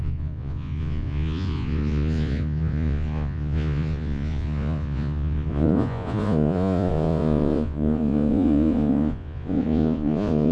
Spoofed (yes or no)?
yes